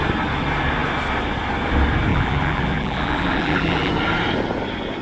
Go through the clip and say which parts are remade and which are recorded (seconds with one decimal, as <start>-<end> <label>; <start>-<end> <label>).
0.0-2.1 recorded; 2.1-3.9 remade; 3.9-5.0 recorded